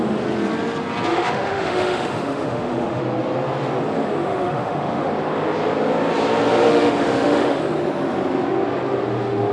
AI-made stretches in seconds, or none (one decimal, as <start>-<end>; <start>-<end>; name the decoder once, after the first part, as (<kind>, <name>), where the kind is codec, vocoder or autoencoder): 1.1-3.0 (autoencoder, DAC-VAE); 4.3-5.1; 6.7-7.6